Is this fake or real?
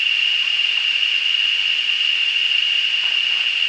real